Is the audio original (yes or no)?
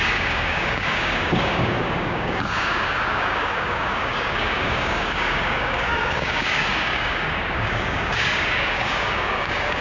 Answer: no